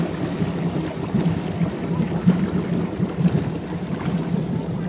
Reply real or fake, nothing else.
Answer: real